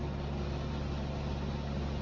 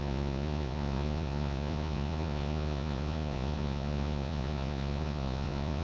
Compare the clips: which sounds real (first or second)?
first